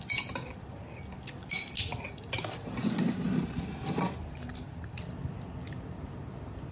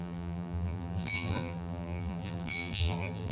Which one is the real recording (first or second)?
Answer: first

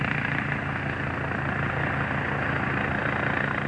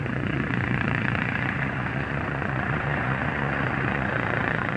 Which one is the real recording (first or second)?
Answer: first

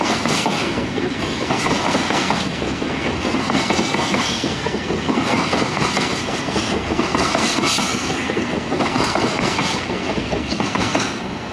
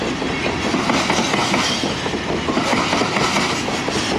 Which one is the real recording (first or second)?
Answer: second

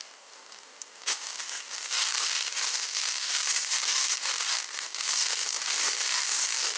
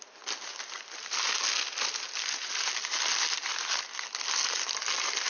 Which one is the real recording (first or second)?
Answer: second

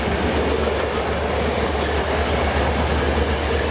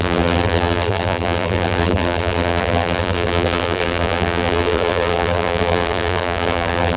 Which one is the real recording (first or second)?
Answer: first